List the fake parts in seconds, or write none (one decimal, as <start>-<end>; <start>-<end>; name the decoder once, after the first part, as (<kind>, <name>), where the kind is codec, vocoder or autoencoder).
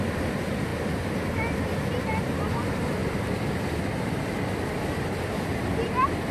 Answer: none